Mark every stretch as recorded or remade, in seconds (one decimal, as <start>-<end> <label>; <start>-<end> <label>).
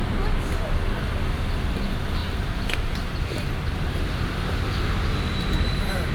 0.0-2.2 recorded; 2.2-6.1 remade